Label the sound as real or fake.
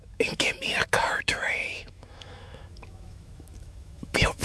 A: fake